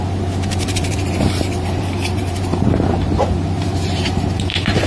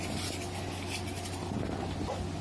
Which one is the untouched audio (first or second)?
second